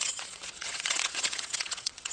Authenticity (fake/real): fake